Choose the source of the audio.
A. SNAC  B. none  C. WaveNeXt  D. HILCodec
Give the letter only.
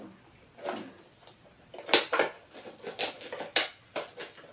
B